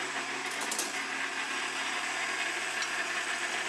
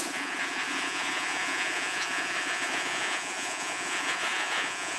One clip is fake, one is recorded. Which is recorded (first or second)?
first